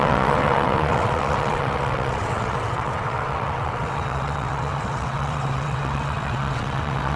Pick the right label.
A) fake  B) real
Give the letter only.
A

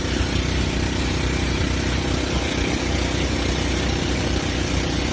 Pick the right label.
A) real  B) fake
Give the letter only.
A